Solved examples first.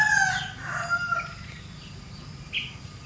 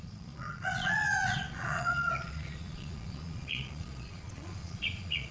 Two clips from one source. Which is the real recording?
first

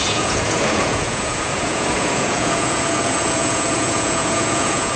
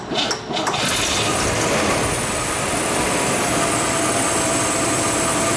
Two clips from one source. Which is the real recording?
second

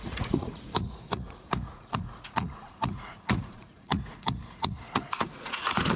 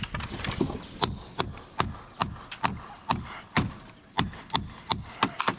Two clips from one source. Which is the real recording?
second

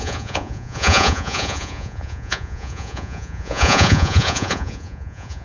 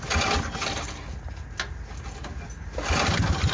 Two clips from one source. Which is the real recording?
second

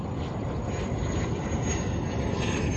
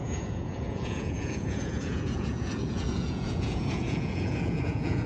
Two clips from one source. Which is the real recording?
first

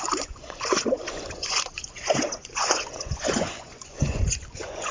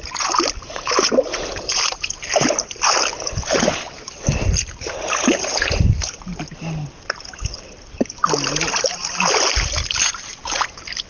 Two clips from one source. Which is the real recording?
second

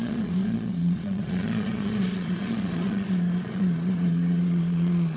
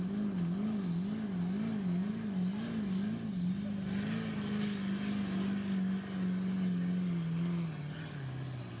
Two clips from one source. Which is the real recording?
second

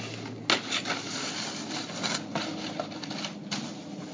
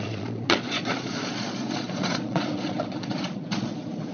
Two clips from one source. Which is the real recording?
first